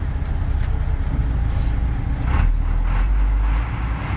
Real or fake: real